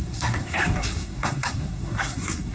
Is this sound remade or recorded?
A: remade